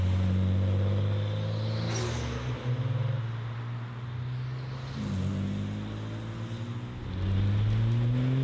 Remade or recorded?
recorded